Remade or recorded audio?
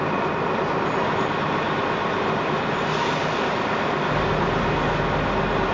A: recorded